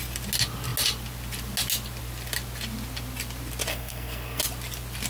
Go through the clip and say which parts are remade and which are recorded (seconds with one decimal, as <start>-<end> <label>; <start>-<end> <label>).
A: 0.0-3.7 recorded; 3.7-4.4 remade; 4.4-5.1 recorded